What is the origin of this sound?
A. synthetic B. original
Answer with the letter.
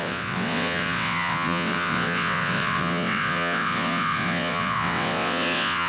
A